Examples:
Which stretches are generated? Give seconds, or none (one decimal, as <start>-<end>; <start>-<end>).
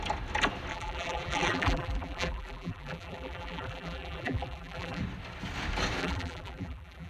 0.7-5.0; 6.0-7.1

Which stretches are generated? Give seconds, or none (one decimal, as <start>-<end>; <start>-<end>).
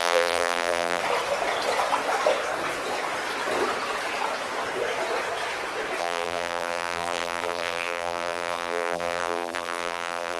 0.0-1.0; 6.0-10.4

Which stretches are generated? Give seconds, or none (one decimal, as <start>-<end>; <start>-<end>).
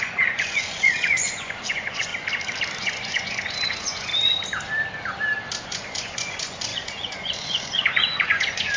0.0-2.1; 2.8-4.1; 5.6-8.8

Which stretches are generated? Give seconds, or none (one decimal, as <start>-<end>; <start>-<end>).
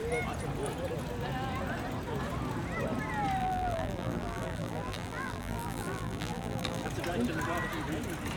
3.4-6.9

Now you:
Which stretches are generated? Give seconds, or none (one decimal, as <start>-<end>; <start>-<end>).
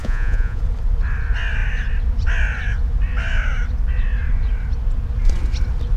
0.0-0.6